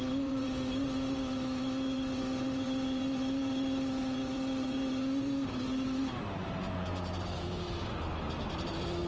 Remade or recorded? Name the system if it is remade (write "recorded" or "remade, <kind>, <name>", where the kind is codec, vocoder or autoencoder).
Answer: remade, vocoder, BigVGAN v2